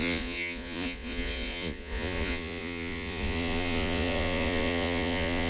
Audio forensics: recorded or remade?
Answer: remade